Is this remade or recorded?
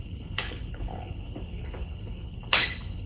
remade